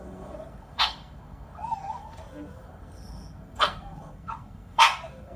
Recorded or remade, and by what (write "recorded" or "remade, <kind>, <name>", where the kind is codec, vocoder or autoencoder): remade, codec, SNAC